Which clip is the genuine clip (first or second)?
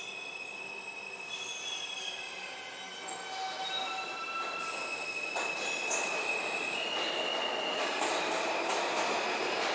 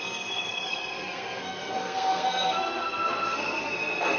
first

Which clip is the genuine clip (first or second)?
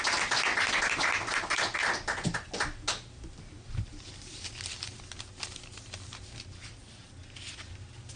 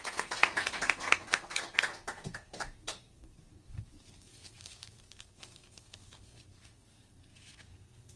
first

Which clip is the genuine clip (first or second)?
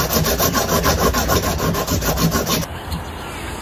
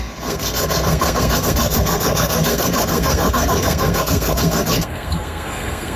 first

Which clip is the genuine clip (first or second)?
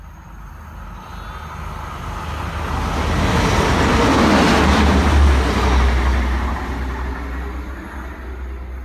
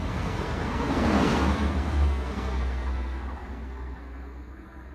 first